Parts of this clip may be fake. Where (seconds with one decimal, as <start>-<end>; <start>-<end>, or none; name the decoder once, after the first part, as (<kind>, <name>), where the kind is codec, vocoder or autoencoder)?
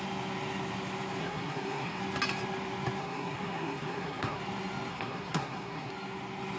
1.2-2.0 (codec, SNAC); 3.0-4.4; 4.9-5.9